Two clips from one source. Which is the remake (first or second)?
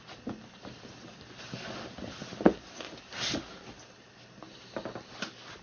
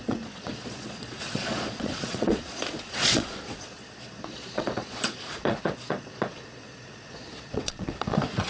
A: second